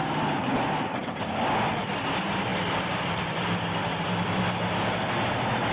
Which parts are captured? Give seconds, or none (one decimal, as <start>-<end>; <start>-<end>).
0.0-1.0; 1.9-2.5; 4.4-5.7